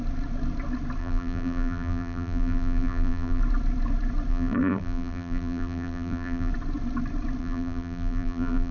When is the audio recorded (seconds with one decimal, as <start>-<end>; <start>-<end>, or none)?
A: 0.0-1.0; 3.4-4.3; 6.5-7.4